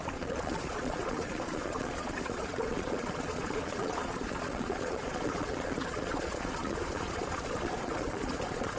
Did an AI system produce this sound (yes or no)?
yes